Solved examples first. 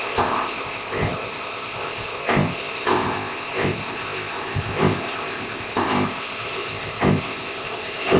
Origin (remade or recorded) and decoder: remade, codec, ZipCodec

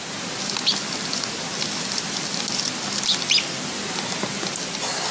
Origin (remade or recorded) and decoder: recorded